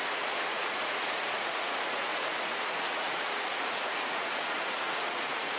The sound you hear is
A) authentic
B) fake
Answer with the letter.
B